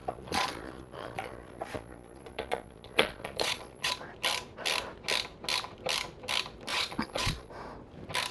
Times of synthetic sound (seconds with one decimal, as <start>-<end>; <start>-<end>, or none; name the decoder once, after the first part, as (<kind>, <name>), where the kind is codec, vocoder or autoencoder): 0.0-3.9 (vocoder, Vocos); 6.7-7.5